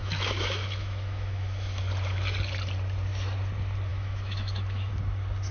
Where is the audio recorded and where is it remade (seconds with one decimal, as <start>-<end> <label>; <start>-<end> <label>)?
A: 0.0-1.8 remade; 1.8-3.9 recorded; 3.9-4.9 remade; 4.9-5.5 recorded